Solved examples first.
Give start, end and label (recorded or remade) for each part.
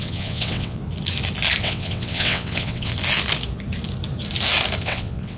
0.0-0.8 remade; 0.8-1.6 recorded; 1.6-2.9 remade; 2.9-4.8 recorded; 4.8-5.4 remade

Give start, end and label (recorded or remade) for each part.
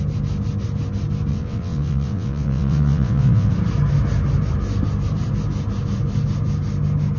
0.0-1.3 recorded; 1.3-3.5 remade; 3.5-7.2 recorded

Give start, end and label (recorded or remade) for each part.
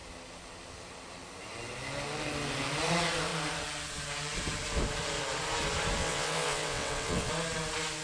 0.0-6.0 recorded; 6.0-7.3 remade; 7.3-8.0 recorded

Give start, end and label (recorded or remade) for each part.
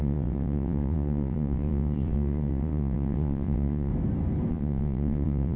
0.0-3.9 remade; 3.9-4.5 recorded; 4.5-5.6 remade